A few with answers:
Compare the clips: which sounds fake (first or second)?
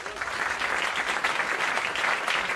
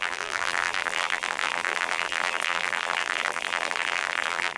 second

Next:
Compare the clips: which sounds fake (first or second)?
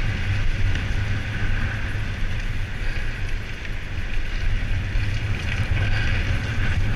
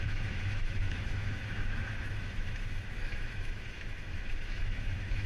second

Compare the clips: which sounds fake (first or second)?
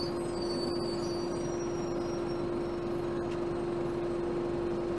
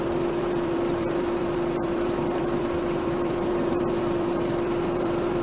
second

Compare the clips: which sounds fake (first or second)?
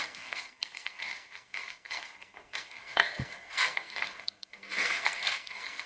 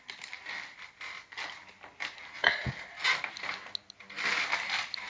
first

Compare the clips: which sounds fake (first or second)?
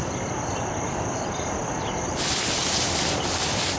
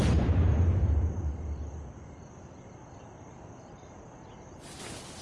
first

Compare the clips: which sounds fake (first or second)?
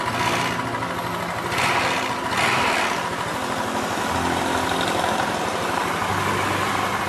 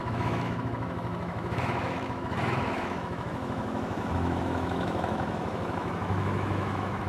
second